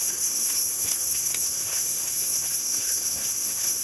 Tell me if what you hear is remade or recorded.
remade